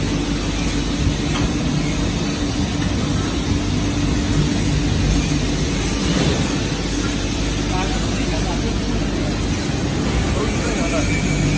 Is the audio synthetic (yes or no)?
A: no